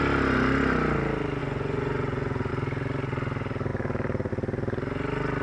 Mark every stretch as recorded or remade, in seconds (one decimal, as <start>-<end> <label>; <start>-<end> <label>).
0.0-1.4 recorded; 1.4-2.5 remade; 2.5-5.4 recorded